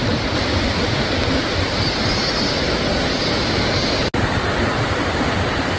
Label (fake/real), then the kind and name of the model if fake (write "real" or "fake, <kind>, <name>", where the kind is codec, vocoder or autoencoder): real